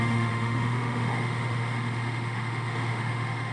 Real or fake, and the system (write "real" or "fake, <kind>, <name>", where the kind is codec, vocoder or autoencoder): fake, autoencoder, DAC-VAE